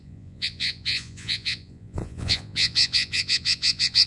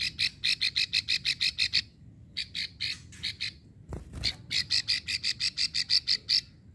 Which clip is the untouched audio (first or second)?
second